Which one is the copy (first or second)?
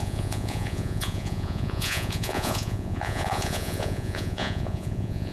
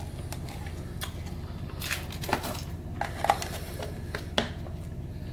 first